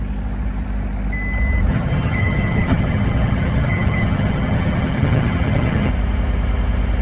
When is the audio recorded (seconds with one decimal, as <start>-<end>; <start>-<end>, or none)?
0.0-1.7; 5.9-7.0